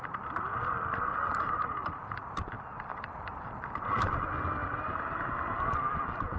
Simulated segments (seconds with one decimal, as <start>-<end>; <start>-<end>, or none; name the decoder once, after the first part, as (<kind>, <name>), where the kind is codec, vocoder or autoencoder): 1.3-2.5 (vocoder, BigVGAN v2); 2.9-3.9; 4.6-5.2